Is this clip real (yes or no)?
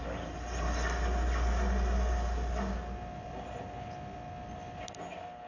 yes